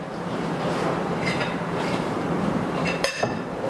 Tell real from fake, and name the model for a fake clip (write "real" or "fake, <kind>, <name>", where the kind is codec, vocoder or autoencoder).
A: fake, vocoder, BigVGAN v2